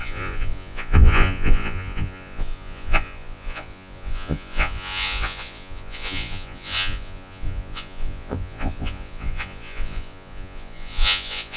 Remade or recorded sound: remade